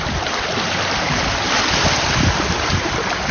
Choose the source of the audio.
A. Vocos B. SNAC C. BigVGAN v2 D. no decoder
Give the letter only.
C